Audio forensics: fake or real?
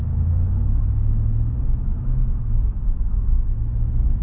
fake